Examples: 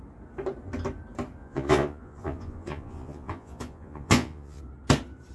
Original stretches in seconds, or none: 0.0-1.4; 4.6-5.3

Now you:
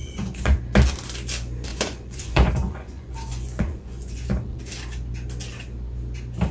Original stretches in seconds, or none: 0.6-1.7; 4.6-6.5

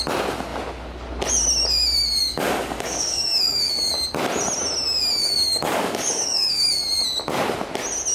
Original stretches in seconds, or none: 0.0-2.2; 3.9-5.2; 6.8-8.1

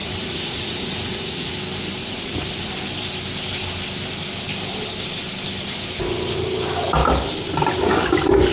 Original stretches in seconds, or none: 1.6-2.0; 2.7-8.5

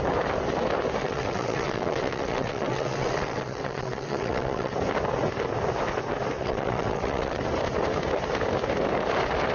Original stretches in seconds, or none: 0.0-1.0; 4.7-6.4; 7.4-9.5